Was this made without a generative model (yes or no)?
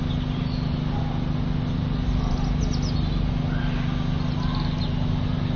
yes